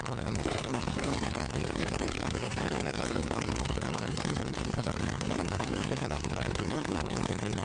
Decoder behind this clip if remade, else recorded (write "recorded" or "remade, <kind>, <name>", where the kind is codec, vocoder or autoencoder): remade, codec, SNAC